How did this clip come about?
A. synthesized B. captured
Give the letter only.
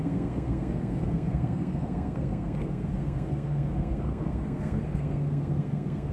A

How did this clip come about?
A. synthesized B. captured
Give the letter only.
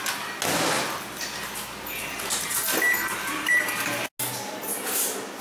B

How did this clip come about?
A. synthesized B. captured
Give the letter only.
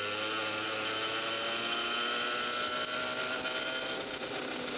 B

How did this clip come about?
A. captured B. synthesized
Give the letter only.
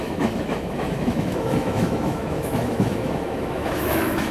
B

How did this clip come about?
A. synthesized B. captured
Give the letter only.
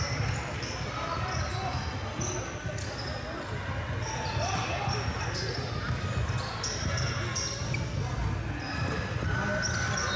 B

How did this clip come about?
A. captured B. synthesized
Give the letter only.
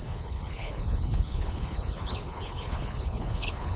B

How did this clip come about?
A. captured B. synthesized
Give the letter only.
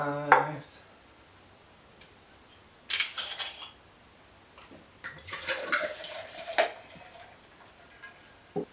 A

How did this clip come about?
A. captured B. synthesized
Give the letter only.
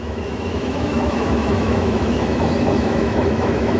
B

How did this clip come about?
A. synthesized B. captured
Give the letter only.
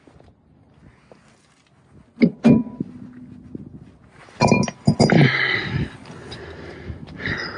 B